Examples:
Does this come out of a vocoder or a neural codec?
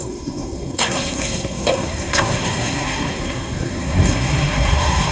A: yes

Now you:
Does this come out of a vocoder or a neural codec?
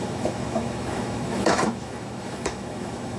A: yes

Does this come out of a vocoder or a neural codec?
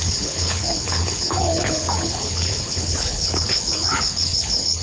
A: yes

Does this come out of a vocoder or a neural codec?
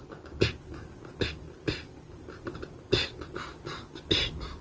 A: no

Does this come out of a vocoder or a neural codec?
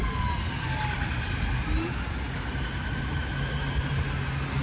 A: no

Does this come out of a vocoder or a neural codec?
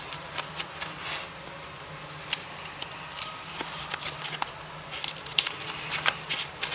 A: no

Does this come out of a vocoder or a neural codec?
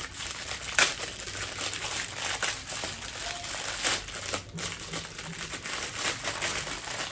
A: no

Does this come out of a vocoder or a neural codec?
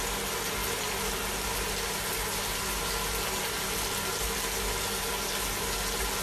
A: no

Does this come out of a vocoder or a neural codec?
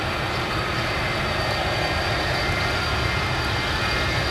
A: no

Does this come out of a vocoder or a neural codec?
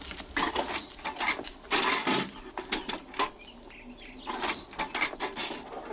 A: no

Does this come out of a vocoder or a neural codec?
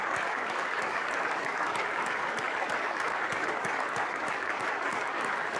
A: yes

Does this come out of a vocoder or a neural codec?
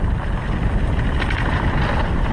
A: no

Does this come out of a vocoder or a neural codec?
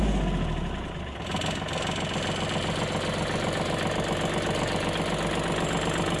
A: no